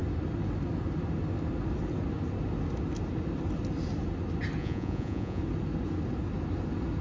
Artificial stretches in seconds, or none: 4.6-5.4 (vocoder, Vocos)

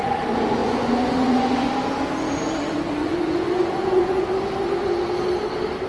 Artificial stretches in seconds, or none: 0.6-1.7 (vocoder, Vocos); 3.0-4.3

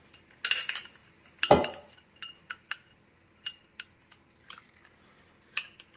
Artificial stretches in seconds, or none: none

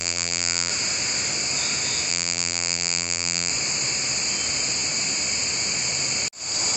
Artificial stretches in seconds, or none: 0.0-0.7 (vocoder, BigVGAN v2); 2.1-3.5

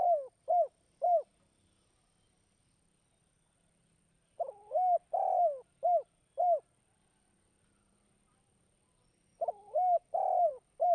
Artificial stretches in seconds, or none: none